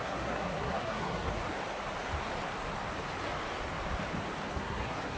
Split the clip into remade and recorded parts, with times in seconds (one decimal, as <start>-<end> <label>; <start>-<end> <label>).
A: 0.0-1.4 remade; 1.4-4.5 recorded; 4.5-5.2 remade